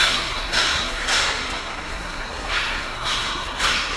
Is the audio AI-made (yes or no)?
yes